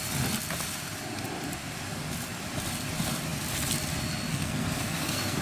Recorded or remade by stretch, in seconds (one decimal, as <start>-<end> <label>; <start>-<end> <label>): 0.0-4.3 recorded; 4.3-5.4 remade